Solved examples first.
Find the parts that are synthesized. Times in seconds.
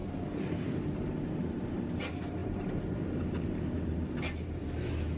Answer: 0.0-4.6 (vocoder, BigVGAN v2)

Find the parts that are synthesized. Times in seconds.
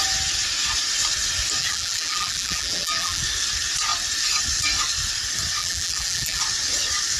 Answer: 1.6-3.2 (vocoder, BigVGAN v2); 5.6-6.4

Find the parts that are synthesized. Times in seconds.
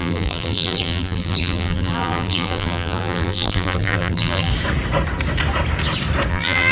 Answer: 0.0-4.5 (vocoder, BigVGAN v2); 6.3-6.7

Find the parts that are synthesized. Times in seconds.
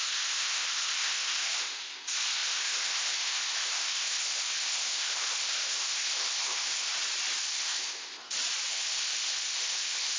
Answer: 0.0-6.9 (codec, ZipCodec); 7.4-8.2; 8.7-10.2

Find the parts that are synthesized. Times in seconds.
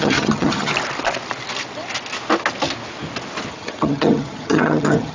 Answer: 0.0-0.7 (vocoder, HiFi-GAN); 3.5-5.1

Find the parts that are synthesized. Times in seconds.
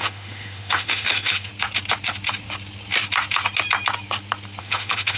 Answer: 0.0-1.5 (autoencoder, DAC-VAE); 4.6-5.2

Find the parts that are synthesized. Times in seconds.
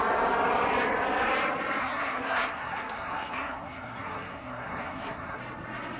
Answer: 1.8-5.4 (codec, SNAC)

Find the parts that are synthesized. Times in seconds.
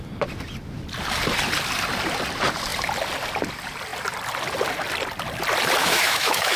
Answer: 5.8-6.6 (autoencoder, DAC-VAE)